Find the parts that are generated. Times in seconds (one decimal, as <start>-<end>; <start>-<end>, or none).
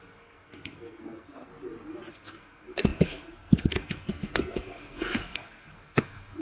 0.0-1.5; 2.1-6.4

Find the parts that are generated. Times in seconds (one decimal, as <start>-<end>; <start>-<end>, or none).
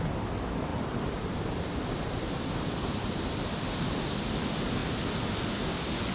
0.7-4.0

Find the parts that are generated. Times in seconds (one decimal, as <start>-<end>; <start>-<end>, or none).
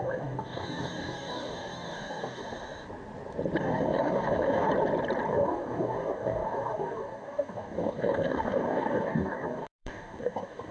0.0-2.4; 3.6-4.7; 5.3-10.7